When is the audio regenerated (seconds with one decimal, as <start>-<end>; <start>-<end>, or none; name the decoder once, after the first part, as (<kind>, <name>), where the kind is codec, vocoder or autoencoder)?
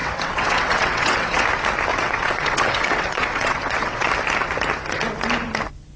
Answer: 0.0-1.4 (vocoder, WaveNeXt); 1.9-4.1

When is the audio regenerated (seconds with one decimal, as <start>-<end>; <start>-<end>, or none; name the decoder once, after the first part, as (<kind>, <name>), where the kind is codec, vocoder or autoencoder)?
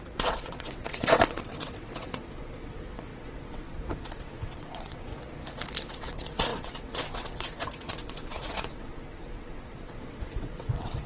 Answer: 0.0-5.1 (vocoder, WaveNeXt); 5.9-11.1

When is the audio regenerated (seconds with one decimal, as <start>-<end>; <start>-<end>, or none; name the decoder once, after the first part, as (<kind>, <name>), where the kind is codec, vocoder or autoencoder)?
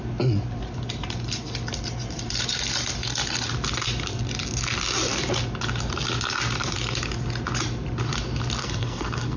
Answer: 8.6-9.4 (codec, SNAC)